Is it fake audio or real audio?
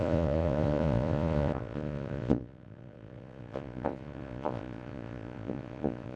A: fake